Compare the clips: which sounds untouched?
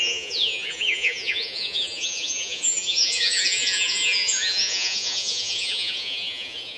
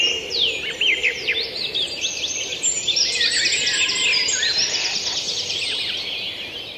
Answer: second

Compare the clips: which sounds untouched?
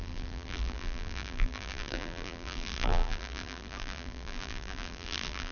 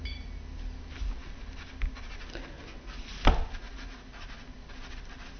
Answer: second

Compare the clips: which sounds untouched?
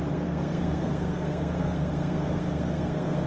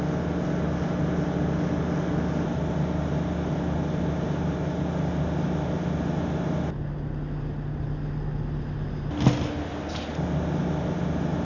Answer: second